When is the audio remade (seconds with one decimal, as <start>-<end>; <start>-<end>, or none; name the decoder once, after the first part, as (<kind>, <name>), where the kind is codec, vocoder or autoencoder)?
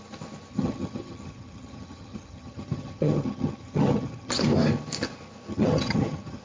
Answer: 0.5-4.3 (vocoder, HiFi-GAN); 5.5-6.4